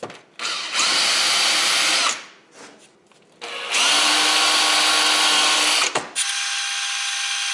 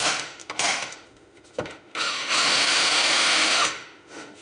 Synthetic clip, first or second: second